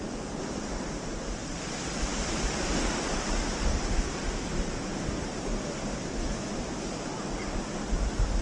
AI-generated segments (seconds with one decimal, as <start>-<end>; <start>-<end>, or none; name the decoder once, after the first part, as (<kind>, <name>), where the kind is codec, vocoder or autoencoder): none